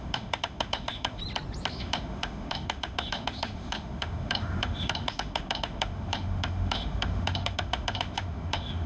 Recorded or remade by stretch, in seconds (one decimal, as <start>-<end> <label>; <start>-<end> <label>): 0.0-1.2 remade; 1.2-1.7 recorded; 1.7-8.9 remade

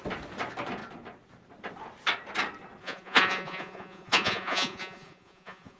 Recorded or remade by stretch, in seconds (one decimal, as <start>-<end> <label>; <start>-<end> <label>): 0.0-2.8 recorded; 2.8-5.8 remade

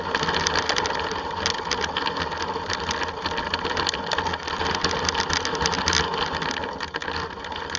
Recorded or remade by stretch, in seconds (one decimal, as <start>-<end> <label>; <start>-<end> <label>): 0.0-7.8 recorded

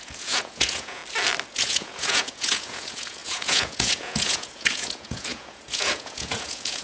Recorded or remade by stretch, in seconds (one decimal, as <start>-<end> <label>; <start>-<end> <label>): 0.0-1.0 remade; 1.0-1.5 recorded; 1.5-6.8 remade

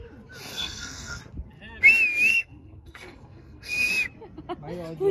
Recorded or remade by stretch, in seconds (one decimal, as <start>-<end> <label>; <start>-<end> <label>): 0.0-0.5 recorded; 0.5-1.2 remade; 1.2-2.3 recorded; 2.3-3.9 remade; 3.9-5.1 recorded

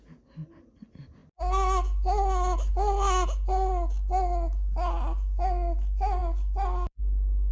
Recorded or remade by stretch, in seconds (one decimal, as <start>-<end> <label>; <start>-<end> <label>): 0.0-7.5 recorded

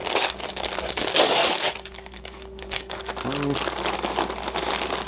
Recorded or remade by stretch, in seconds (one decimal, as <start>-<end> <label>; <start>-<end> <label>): 0.0-3.1 remade; 3.1-5.1 recorded